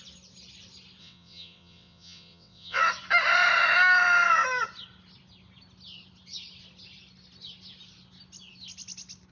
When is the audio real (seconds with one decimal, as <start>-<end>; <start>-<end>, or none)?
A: 0.0-1.0; 2.8-9.3